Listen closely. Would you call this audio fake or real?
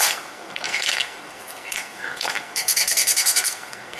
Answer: fake